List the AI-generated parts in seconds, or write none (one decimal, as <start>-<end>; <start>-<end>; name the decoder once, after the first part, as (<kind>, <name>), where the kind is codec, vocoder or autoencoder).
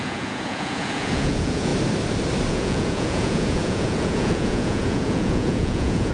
0.0-1.7 (vocoder, Vocos); 2.5-6.1